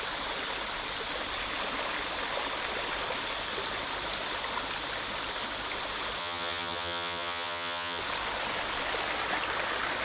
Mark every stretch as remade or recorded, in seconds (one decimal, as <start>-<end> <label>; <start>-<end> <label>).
0.0-6.2 recorded; 6.2-8.0 remade; 8.0-10.0 recorded